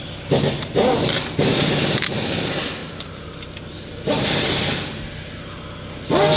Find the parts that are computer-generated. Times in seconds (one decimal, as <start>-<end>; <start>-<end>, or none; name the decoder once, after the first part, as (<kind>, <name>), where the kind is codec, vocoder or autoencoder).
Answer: 2.8-3.3 (vocoder, BigVGAN v2)

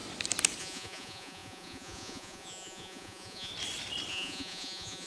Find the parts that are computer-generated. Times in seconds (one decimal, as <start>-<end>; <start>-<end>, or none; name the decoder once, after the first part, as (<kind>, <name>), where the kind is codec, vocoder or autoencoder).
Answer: 0.6-3.5 (vocoder, Vocos); 4.1-5.1

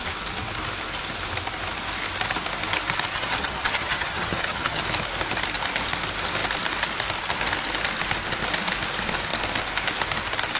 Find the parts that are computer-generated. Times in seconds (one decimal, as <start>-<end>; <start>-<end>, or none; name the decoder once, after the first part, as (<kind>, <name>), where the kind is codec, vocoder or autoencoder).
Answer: 3.1-4.8 (vocoder, HiFi-GAN)

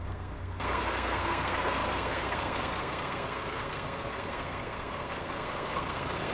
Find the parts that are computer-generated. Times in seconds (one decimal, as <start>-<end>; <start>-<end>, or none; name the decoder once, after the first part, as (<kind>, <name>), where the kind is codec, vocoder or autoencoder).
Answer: 0.0-6.3 (codec, SNAC)

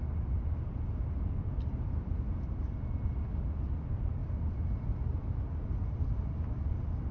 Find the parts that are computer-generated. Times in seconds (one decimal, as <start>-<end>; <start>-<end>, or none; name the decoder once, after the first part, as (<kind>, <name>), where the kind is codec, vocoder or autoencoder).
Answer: none